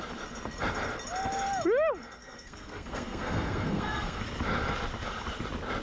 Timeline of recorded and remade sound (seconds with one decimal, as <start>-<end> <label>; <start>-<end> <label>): 0.0-2.2 recorded; 2.2-4.2 remade; 4.2-5.8 recorded